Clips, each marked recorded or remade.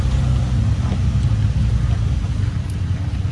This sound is recorded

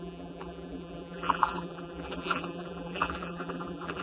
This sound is remade